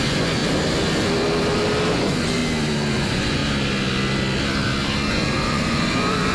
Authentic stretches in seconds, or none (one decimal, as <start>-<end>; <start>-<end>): 0.4-1.9; 2.4-2.9; 3.4-5.1